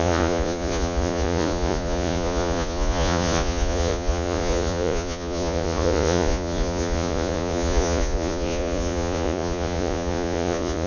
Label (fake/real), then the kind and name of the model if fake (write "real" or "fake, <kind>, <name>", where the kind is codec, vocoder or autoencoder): fake, vocoder, Vocos